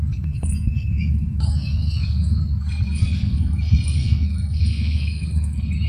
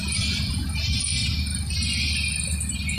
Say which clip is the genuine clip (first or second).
second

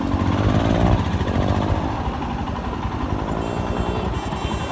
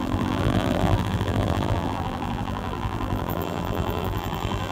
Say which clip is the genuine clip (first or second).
first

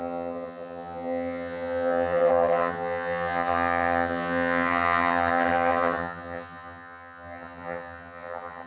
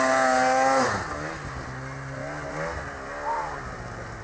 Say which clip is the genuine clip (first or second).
second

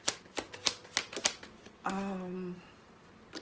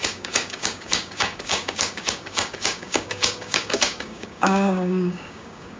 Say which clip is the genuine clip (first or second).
first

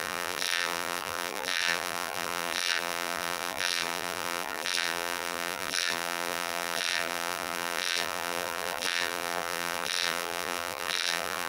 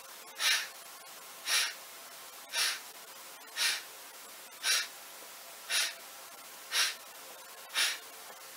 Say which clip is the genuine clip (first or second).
second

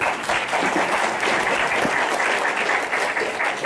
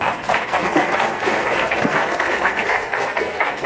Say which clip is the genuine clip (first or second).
first